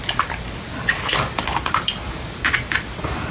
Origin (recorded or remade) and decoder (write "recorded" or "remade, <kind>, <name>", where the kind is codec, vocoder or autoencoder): recorded